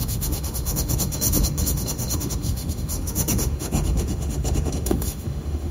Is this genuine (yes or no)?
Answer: no